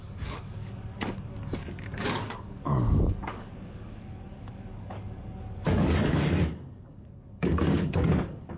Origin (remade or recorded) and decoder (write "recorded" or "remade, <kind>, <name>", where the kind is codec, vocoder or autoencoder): remade, codec, DAC